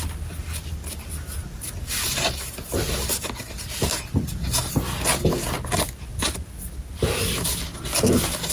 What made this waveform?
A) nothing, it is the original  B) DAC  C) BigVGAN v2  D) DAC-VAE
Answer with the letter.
A